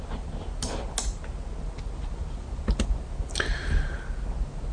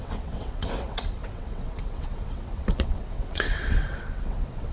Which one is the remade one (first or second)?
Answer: second